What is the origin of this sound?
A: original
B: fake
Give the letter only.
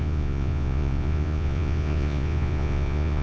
B